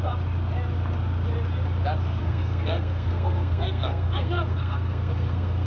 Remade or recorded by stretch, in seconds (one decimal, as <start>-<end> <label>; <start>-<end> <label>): 0.0-2.2 recorded; 2.2-5.7 remade